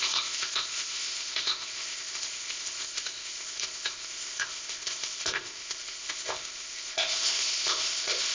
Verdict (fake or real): fake